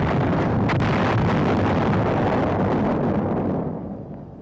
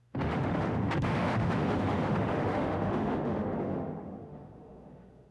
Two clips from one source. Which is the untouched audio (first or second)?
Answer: first